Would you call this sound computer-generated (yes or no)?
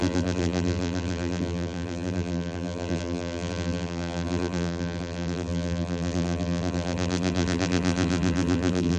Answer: yes